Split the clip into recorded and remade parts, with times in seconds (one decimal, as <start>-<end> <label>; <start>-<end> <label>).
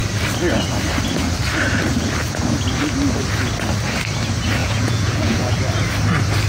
0.0-4.6 recorded; 4.6-5.5 remade; 5.5-6.5 recorded